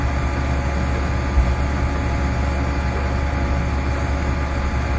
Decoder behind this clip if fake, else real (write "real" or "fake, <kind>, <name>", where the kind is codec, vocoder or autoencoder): real